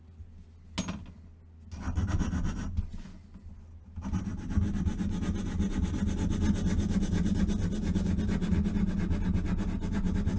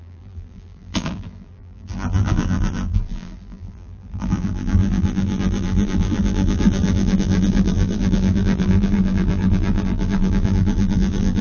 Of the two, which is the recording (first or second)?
first